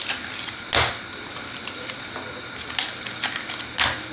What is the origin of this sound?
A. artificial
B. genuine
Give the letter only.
B